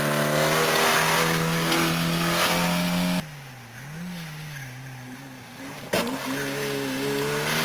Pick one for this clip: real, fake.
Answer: real